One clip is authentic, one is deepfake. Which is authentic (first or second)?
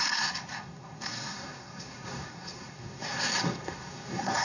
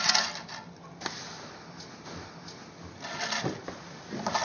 second